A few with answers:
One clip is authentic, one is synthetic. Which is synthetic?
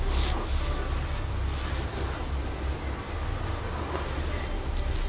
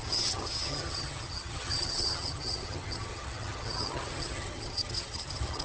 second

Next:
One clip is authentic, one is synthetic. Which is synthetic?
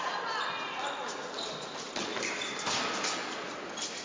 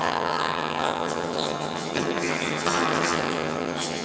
second